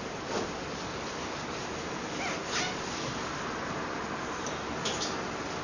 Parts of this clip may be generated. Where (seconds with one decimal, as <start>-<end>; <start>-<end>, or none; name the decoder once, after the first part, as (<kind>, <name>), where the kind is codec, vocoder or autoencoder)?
none